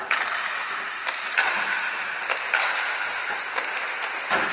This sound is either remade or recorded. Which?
recorded